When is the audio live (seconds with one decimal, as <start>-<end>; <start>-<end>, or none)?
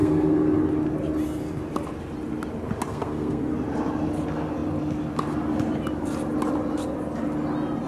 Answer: 0.6-2.9; 3.5-7.9